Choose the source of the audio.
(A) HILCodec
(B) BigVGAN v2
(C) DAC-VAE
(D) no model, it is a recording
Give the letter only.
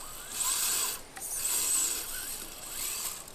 D